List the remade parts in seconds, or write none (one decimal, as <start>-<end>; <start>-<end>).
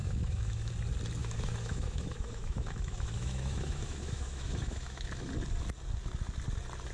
0.0-0.7; 1.2-5.3